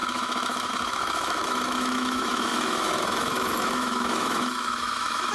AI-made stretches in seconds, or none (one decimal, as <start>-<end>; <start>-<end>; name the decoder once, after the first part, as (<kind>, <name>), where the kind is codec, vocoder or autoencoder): 0.0-5.3 (autoencoder, DAC-VAE)